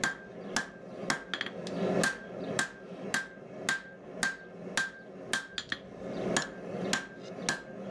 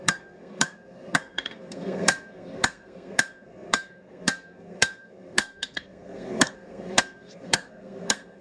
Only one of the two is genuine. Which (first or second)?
first